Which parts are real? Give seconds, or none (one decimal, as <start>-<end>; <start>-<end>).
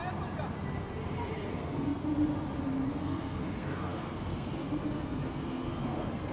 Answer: 0.0-1.5; 2.0-2.9